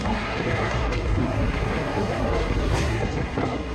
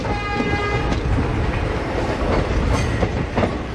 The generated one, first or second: first